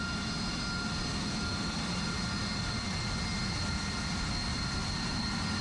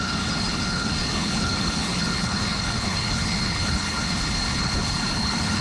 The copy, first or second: second